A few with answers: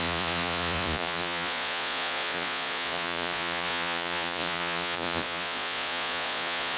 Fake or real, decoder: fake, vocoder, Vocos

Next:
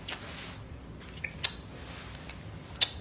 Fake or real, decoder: real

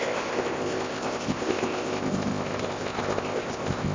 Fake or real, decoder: fake, codec, ZipCodec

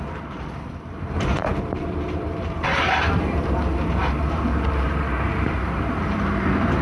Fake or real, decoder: fake, vocoder, BigVGAN v2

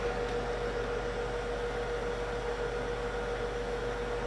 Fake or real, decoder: real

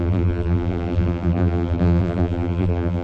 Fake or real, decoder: fake, vocoder, BigVGAN v2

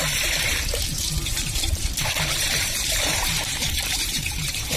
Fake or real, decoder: fake, vocoder, BigVGAN v2